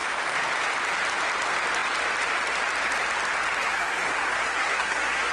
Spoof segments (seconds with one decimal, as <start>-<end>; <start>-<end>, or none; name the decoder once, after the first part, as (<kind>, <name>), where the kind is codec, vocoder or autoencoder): 3.6-5.3 (codec, SNAC)